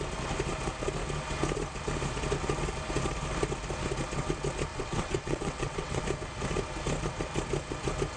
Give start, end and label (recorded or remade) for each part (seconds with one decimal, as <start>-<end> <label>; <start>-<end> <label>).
0.0-4.7 recorded; 4.7-6.0 remade; 6.0-8.2 recorded